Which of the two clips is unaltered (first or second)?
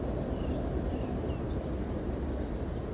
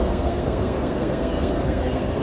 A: first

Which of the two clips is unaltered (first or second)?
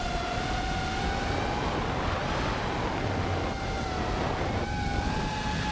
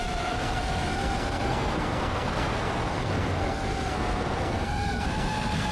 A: first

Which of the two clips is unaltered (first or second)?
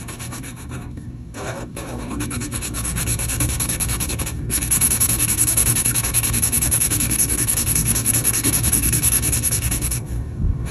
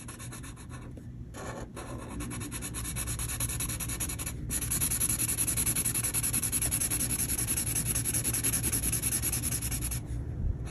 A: second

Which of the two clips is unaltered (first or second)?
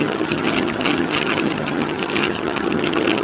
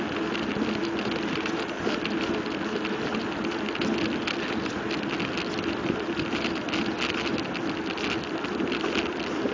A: second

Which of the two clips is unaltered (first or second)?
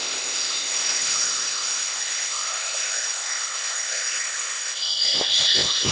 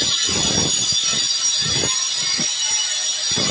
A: second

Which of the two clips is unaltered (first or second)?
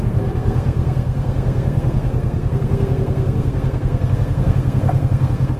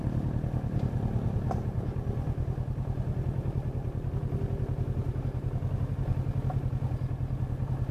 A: second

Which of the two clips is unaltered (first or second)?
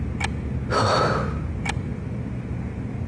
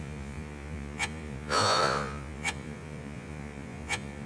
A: first